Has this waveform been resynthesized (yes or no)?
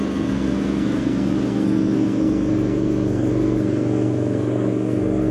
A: yes